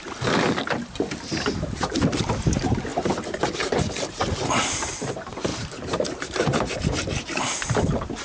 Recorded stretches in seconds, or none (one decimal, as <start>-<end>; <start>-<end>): 0.0-2.9; 4.3-5.5; 6.7-8.2